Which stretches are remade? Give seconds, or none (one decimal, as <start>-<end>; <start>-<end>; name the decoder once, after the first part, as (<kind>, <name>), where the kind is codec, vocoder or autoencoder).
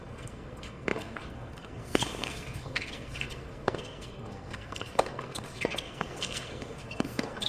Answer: 0.0-7.5 (codec, SNAC)